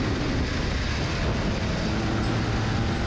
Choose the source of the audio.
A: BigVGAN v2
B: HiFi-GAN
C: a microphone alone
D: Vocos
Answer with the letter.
C